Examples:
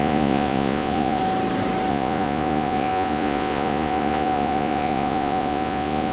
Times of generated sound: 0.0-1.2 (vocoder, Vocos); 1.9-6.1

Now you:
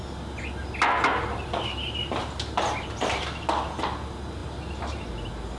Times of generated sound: none

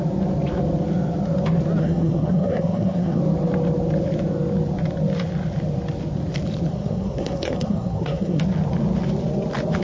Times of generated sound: 1.8-3.2 (codec, SNAC); 6.7-8.4

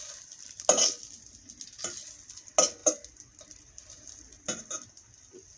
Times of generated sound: none

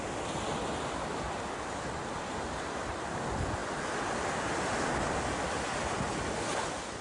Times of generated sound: none